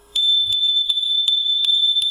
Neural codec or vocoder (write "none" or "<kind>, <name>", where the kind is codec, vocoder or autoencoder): codec, SNAC